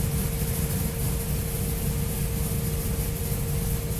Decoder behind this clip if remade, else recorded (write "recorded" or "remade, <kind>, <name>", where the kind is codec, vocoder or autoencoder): recorded